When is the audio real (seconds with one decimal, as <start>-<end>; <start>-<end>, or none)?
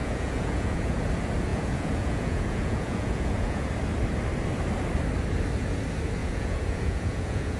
1.0-1.5; 3.7-6.2